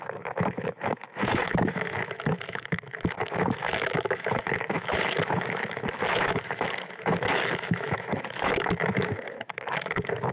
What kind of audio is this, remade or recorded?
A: remade